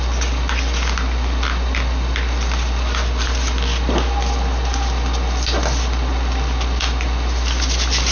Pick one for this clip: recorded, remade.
recorded